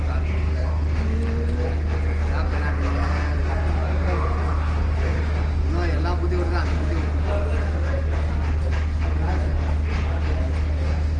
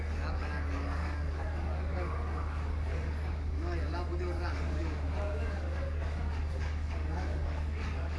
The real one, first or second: first